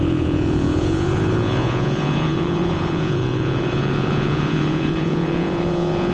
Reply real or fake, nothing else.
fake